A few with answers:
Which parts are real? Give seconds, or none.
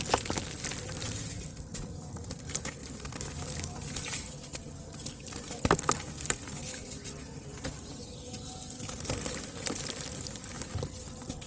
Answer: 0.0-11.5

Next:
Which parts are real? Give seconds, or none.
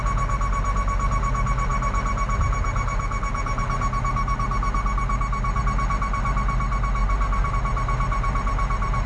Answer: 0.0-7.0; 7.5-9.1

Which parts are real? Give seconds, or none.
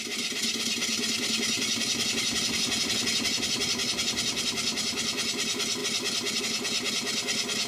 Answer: 0.0-7.7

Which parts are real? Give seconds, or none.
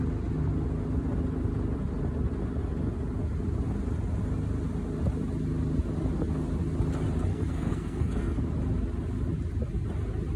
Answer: 0.0-7.3; 8.4-10.4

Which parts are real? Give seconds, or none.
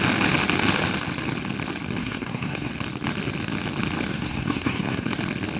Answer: 0.0-2.0; 2.7-4.1; 5.1-5.6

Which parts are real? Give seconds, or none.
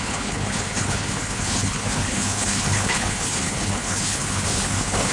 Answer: none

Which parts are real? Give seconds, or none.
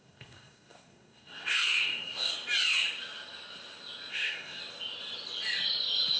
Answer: 2.3-4.1; 4.6-6.2